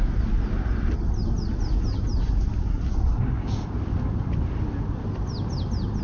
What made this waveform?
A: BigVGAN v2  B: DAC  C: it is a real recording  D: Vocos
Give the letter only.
C